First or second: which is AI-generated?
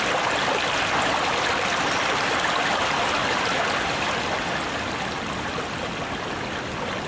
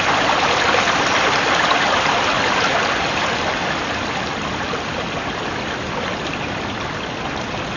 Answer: second